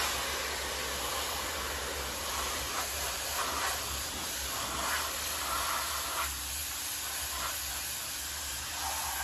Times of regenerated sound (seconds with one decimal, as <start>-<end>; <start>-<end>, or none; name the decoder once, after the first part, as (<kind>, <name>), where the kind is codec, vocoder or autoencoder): 2.3-4.6 (vocoder, BigVGAN v2)